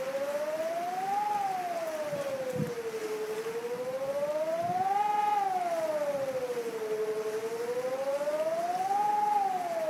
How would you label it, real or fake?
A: real